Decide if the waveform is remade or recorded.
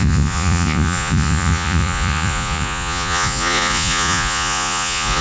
remade